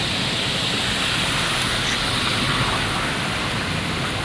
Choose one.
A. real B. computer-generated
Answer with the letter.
A